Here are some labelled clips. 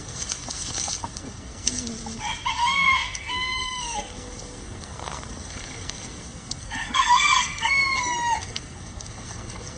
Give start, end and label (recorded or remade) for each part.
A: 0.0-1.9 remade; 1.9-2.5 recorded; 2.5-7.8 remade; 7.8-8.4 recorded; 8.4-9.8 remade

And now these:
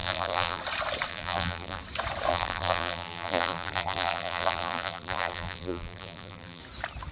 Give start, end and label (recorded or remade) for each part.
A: 0.0-0.6 remade; 0.6-1.1 recorded; 1.1-1.8 remade; 1.8-2.3 recorded; 2.3-6.6 remade; 6.6-7.1 recorded

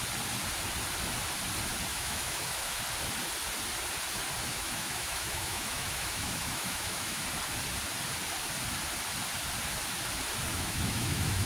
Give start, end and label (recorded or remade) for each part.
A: 0.0-1.9 recorded; 1.9-2.8 remade; 2.8-4.5 recorded; 4.5-7.2 remade; 7.2-10.5 recorded; 10.5-11.5 remade